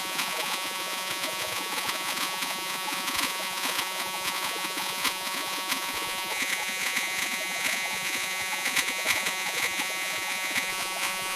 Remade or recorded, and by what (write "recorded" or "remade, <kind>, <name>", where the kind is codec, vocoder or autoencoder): remade, vocoder, Vocos